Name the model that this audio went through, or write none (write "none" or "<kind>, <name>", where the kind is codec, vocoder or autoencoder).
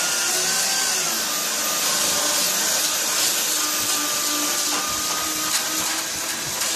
none